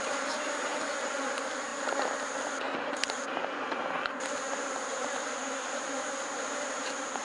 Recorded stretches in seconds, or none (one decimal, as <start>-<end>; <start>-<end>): 1.7-2.9